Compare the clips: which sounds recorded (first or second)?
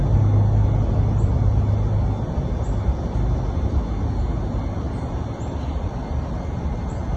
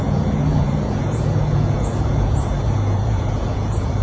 first